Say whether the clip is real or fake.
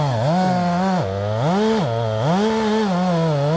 real